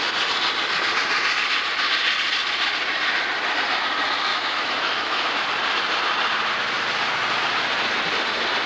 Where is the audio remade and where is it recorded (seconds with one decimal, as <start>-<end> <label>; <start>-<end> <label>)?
0.0-4.3 recorded; 4.3-5.3 remade; 5.3-8.7 recorded